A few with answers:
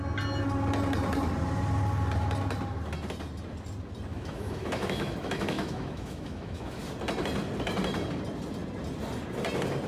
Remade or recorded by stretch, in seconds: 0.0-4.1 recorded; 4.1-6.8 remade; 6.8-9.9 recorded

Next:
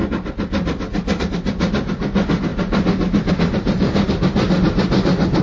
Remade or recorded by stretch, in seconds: 0.0-5.4 recorded

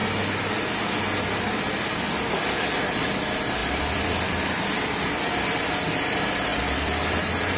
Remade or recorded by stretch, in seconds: 0.0-2.8 recorded; 2.8-7.6 remade

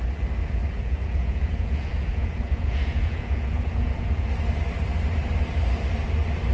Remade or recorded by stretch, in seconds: 0.0-0.4 recorded; 0.4-4.3 remade; 4.3-6.5 recorded

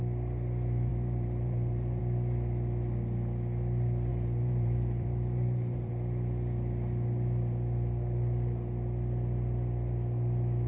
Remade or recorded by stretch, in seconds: 0.0-0.9 recorded; 0.9-2.0 remade; 2.0-4.1 recorded; 4.1-5.9 remade; 5.9-10.7 recorded